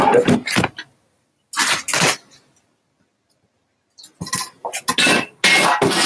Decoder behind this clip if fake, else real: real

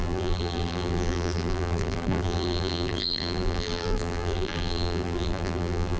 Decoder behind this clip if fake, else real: fake, vocoder, BigVGAN v2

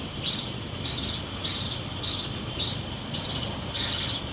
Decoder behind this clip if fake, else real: real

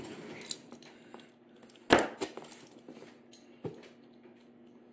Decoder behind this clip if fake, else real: real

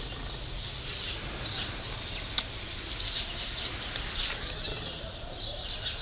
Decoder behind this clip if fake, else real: real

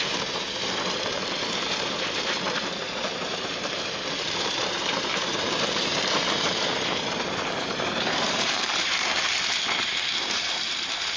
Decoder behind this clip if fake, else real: fake, vocoder, BigVGAN v2